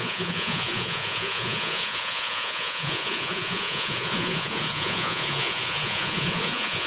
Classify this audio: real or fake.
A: fake